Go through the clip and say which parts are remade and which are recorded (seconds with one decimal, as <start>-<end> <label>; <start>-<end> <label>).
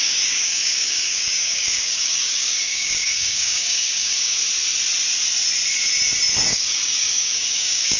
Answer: 0.0-4.4 remade; 4.4-6.5 recorded; 6.5-8.0 remade